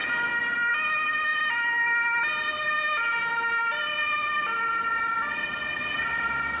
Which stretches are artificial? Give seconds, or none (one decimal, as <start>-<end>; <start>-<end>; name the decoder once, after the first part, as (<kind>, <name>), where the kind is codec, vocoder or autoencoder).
none